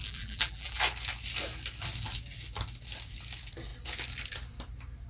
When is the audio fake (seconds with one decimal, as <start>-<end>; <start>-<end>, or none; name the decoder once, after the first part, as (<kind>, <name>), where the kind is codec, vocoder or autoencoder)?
0.0-0.8 (vocoder, BigVGAN v2)